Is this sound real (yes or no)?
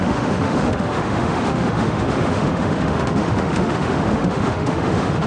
no